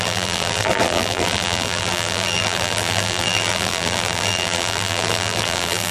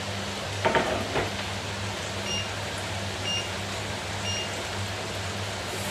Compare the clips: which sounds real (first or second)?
second